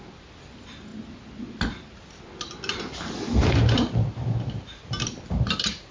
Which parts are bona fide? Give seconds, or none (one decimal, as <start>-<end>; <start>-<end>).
0.0-5.9